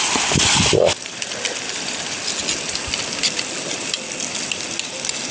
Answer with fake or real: real